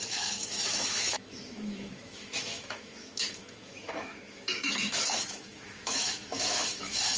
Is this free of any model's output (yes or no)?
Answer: no